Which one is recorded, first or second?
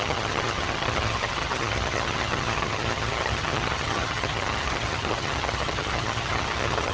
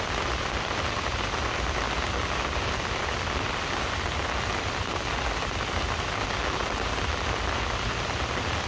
second